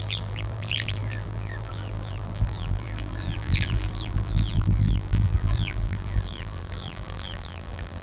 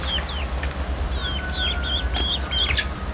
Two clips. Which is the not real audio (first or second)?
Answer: first